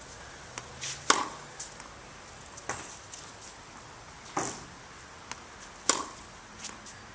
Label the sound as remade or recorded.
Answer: recorded